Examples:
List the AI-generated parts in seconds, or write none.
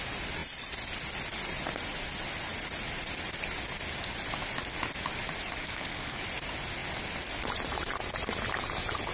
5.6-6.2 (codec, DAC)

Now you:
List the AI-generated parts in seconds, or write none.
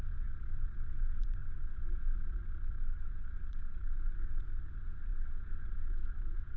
0.0-6.6 (vocoder, Vocos)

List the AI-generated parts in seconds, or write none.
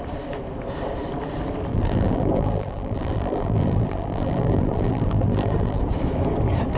1.7-5.8 (vocoder, BigVGAN v2)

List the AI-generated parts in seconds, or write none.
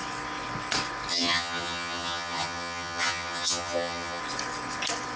1.1-4.2 (vocoder, HiFi-GAN)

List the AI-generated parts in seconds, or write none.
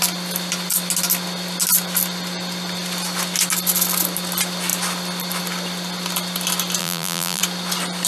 6.8-7.4 (vocoder, BigVGAN v2)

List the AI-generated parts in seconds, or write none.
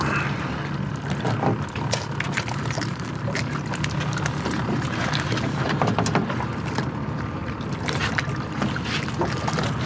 7.4-8.0 (vocoder, BigVGAN v2)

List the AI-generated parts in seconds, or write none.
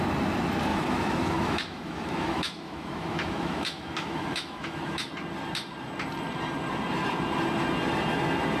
0.7-5.1 (autoencoder, DAC-VAE)